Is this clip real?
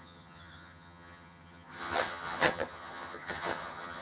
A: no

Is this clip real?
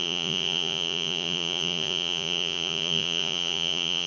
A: no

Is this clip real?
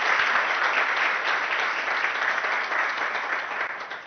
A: yes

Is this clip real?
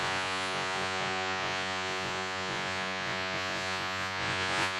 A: no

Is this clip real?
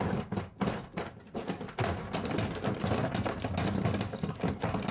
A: yes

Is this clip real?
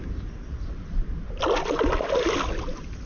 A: yes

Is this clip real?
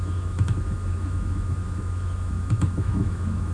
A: no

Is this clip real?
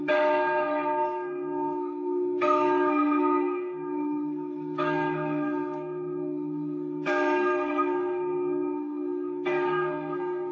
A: no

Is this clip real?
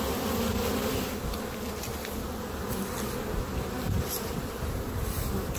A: yes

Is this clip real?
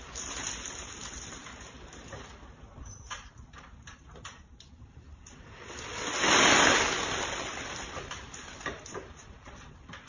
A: yes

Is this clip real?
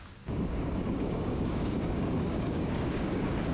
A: no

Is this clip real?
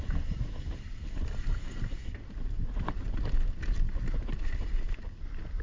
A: yes